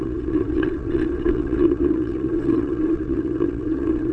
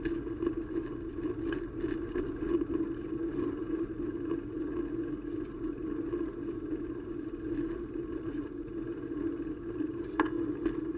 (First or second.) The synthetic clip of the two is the first